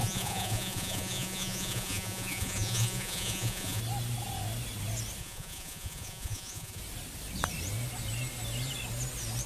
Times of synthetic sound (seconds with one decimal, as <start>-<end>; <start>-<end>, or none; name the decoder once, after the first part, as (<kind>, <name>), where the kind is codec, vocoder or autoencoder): 0.0-3.8 (vocoder, Vocos); 5.2-6.8